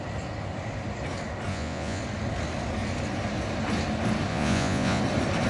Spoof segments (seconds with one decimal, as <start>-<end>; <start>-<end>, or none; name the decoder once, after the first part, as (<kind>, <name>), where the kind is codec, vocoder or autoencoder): 1.5-2.0 (vocoder, Vocos); 4.3-5.0